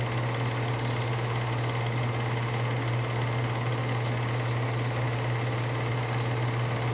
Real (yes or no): yes